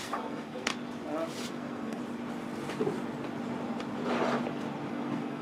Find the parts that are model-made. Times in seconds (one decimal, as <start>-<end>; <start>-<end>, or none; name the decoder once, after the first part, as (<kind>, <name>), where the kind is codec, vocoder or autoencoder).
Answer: 0.0-0.7 (codec, SNAC); 1.5-2.0; 4.9-5.4